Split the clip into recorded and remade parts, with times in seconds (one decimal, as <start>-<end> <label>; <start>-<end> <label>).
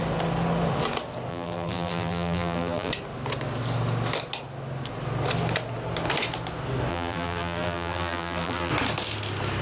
0.0-1.3 recorded; 1.3-2.9 remade; 2.9-6.9 recorded; 6.9-8.7 remade; 8.7-9.6 recorded